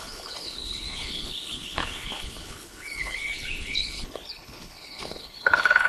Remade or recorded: remade